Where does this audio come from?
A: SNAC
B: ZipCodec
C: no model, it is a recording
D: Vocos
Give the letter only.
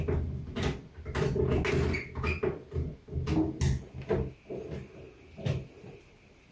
C